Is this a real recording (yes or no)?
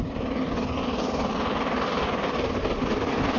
yes